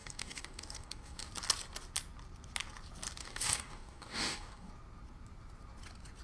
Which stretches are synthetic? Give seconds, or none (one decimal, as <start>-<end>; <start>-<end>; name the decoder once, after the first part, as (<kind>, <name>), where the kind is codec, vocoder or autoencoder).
0.0-1.3 (codec, DAC); 3.2-4.7